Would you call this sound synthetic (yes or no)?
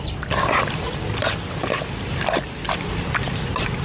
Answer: no